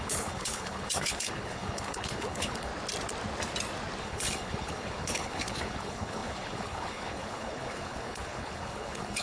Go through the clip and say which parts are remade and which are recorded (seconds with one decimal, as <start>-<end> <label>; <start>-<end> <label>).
0.0-2.7 remade; 2.7-4.0 recorded; 4.0-9.2 remade